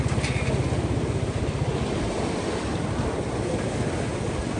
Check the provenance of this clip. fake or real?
real